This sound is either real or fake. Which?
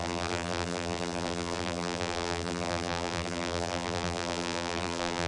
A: fake